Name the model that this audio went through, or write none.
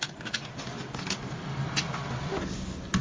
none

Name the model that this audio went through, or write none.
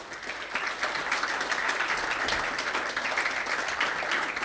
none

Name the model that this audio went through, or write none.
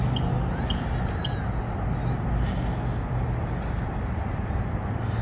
none